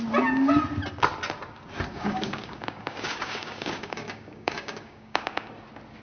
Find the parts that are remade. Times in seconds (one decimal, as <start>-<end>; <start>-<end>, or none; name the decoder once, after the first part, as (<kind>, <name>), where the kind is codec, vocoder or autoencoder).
1.9-5.5 (codec, DAC)